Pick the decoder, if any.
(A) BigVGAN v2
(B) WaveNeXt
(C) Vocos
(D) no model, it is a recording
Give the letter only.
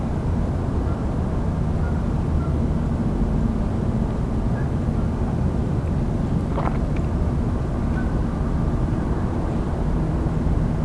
D